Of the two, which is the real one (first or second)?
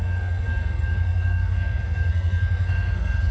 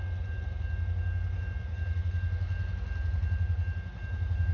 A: second